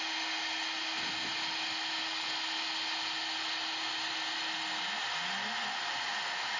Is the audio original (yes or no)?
yes